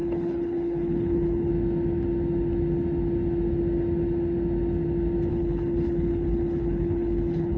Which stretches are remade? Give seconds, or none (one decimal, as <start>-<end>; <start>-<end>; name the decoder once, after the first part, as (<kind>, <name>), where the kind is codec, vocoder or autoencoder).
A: 0.0-1.5 (codec, HILCodec); 5.3-7.6